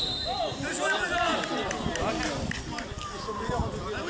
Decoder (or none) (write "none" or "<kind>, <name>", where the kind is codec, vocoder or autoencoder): none